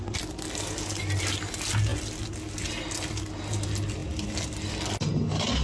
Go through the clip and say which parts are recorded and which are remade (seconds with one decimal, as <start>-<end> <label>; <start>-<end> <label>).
0.0-5.6 recorded